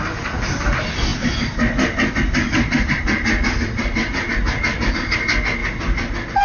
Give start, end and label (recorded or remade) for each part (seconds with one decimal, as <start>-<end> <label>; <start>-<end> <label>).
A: 0.0-6.4 recorded